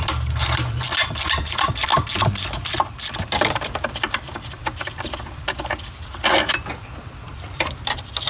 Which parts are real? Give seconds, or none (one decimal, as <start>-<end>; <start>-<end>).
1.9-3.5